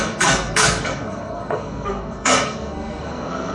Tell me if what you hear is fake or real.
fake